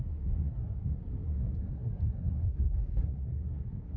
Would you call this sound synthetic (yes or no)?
yes